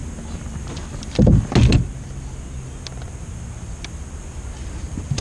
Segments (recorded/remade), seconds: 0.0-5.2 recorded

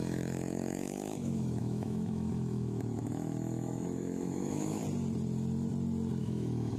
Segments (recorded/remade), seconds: 0.0-4.8 remade; 4.8-6.2 recorded; 6.2-6.8 remade

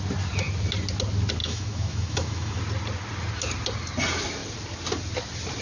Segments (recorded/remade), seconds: 0.0-1.4 recorded; 1.4-2.6 remade; 2.6-5.6 recorded

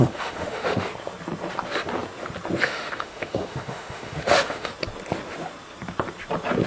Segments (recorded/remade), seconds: 0.0-0.9 remade; 0.9-2.6 recorded; 2.6-4.7 remade; 4.7-6.7 recorded

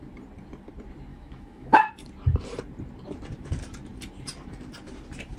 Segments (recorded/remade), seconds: 0.0-1.1 recorded; 1.1-1.9 remade; 1.9-5.4 recorded

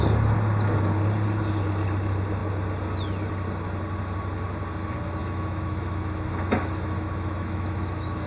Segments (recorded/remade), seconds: 0.0-5.2 recorded; 5.2-8.3 remade

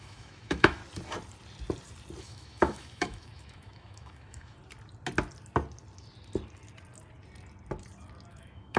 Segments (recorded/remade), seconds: 0.0-0.8 remade; 0.8-2.2 recorded; 2.2-4.6 remade; 4.6-8.3 recorded; 8.3-8.8 remade

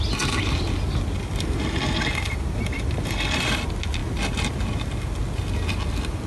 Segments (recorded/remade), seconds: 0.0-6.3 recorded